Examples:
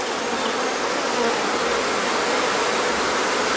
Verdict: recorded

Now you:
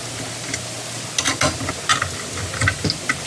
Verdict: recorded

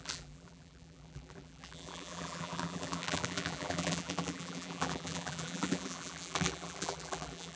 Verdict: remade